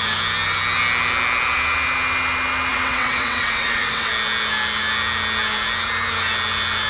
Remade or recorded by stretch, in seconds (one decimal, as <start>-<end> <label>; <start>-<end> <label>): 0.0-2.7 recorded; 2.7-4.1 remade; 4.1-6.9 recorded